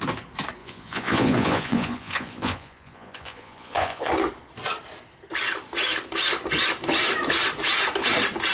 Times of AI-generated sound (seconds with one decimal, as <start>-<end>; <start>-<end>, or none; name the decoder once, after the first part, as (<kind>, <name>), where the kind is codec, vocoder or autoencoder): 0.6-4.1 (vocoder, Vocos)